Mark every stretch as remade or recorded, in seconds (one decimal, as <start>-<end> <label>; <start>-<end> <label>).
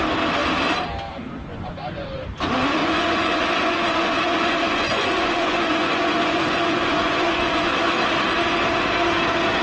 0.0-1.5 recorded; 1.5-2.2 remade; 2.2-2.8 recorded; 2.8-7.8 remade; 7.8-9.6 recorded